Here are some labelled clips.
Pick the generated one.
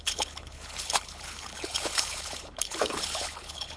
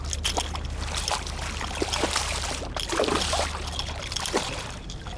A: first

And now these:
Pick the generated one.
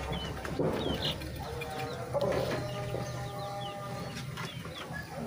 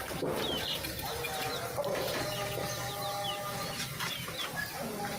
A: second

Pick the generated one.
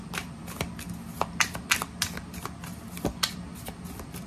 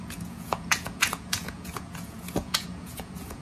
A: second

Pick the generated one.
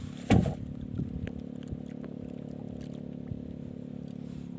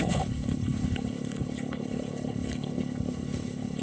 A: second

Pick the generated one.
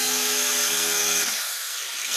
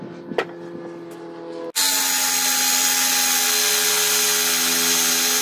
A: first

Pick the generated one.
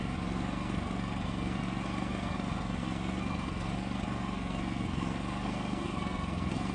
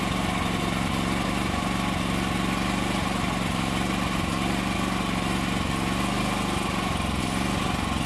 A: first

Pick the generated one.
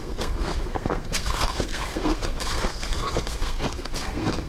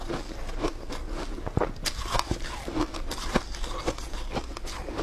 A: first